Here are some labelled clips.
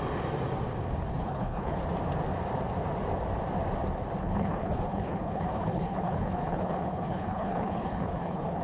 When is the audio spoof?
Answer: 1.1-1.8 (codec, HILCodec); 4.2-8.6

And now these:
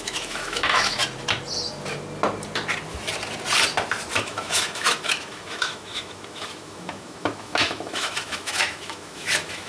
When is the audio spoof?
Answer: 0.0-1.0 (autoencoder, DAC-VAE); 4.2-9.7

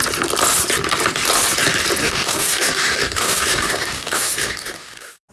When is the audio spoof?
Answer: 2.0-5.3 (codec, DAC)

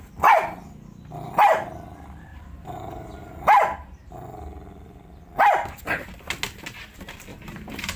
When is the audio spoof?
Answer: 2.3-4.1 (vocoder, BigVGAN v2); 7.3-8.0

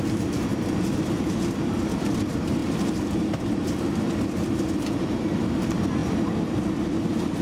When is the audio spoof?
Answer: 0.0-2.6 (vocoder, BigVGAN v2); 3.4-6.0; 6.9-7.4

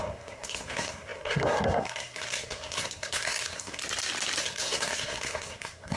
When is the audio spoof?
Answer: 0.0-3.8 (codec, SNAC); 4.4-6.0